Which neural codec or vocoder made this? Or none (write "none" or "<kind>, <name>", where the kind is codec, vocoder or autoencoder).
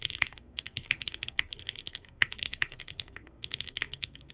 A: codec, SNAC